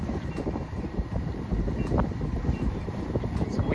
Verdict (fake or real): real